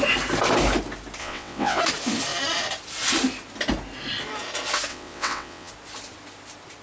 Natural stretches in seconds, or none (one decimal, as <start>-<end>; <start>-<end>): 0.0-1.2; 1.8-4.9; 5.7-6.8